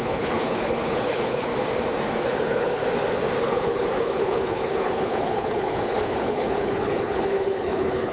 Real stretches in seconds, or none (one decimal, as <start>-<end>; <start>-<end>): 1.5-2.2; 2.8-3.4